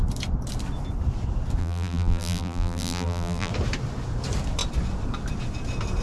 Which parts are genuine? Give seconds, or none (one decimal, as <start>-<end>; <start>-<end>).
0.0-1.6; 3.5-6.0